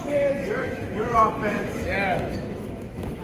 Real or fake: fake